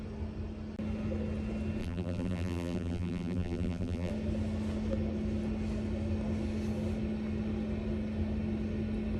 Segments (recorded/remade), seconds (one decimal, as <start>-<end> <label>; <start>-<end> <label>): 0.0-1.8 recorded; 1.8-4.1 remade; 4.1-9.2 recorded